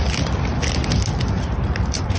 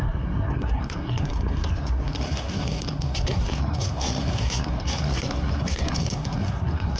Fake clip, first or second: second